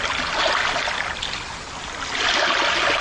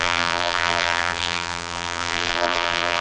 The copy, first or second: second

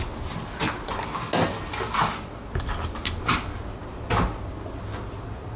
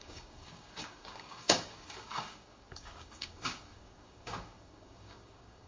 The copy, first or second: second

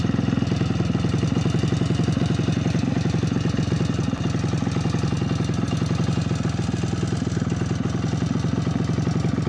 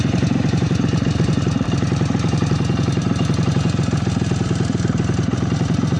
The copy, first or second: second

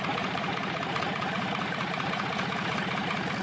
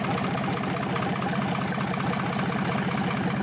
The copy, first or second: first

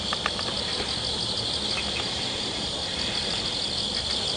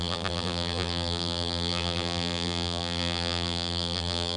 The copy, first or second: second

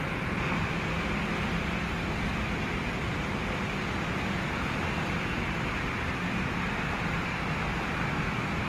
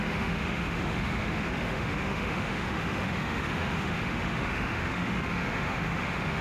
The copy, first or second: second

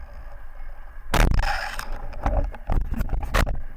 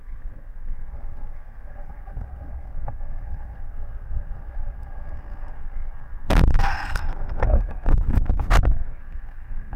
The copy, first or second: second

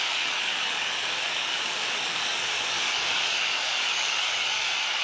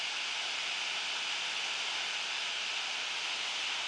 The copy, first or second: first